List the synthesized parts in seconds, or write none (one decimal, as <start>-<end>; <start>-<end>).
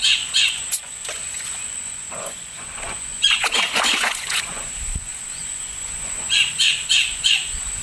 0.0-7.8